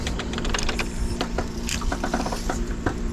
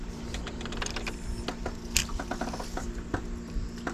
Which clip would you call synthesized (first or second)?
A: first